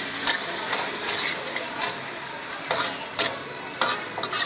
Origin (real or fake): real